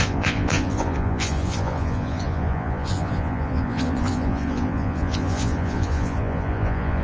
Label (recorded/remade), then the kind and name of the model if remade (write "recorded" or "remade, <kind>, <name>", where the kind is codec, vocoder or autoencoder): remade, vocoder, Vocos